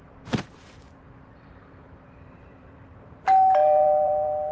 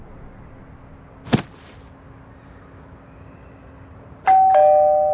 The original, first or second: second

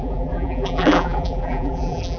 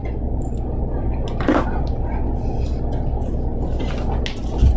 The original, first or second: second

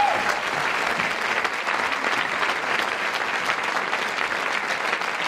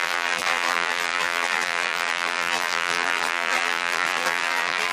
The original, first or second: first